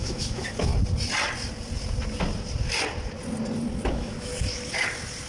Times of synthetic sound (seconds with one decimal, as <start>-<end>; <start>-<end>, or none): 0.0-0.7; 3.9-4.3

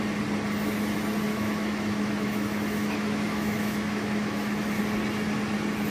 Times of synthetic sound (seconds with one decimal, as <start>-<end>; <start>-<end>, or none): 1.3-4.8

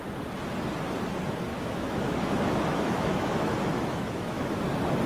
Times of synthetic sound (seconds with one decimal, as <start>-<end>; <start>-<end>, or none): 1.5-4.6

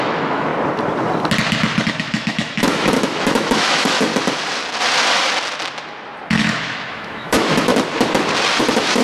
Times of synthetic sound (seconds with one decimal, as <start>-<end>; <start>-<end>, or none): 0.0-0.5; 2.0-4.1; 6.4-7.7; 8.6-9.0

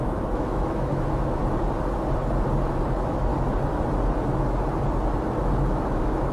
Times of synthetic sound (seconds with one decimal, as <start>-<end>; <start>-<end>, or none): 0.0-1.4; 2.9-3.3; 5.7-6.3

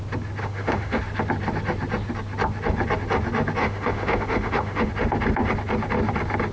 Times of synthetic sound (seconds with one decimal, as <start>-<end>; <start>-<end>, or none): 0.4-1.0; 3.6-4.9

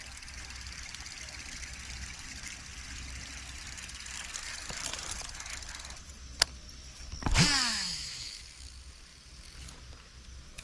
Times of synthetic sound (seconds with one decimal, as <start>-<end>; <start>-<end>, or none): 7.7-8.4